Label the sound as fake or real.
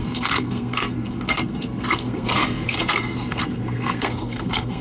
fake